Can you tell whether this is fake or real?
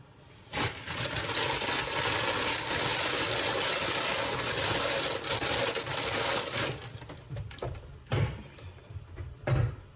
real